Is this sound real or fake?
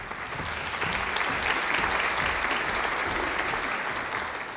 real